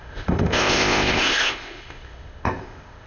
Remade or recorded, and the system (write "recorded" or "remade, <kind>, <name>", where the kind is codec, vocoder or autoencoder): remade, codec, ZipCodec